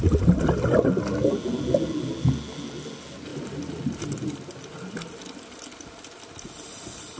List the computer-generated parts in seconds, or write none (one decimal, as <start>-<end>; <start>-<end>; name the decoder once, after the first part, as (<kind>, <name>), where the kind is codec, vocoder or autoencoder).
none